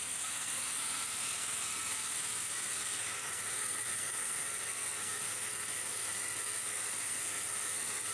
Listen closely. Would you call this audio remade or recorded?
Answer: remade